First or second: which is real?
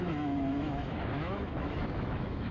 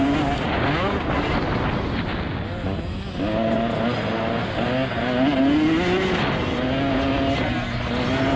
second